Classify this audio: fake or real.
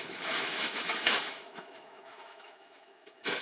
fake